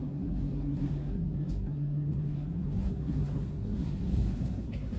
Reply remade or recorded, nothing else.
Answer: remade